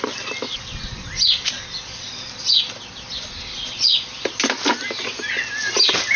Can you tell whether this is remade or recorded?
recorded